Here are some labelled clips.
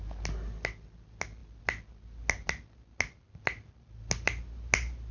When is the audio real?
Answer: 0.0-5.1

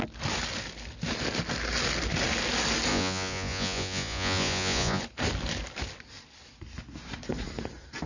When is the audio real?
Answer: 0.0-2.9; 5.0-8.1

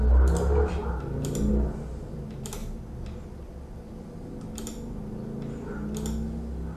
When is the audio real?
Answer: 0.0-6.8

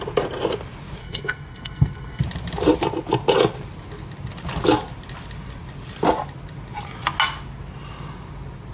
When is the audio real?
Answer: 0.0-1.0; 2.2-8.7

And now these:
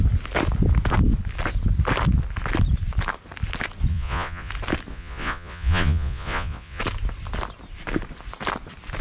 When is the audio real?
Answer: 0.0-3.9; 4.5-4.9; 6.8-9.0